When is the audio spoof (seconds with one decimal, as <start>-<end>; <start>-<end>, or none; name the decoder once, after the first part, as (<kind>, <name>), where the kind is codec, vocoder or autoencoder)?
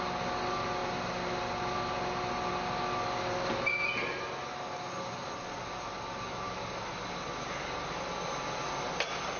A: none